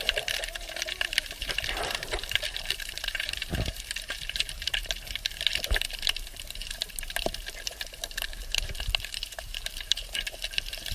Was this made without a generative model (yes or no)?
no